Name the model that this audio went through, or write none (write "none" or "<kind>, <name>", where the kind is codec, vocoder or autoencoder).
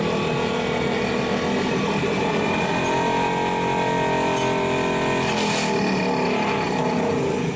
none